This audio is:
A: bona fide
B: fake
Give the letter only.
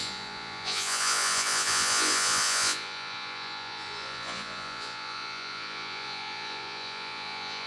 B